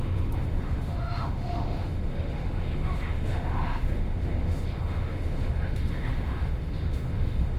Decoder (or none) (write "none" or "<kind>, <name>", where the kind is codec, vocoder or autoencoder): autoencoder, DAC-VAE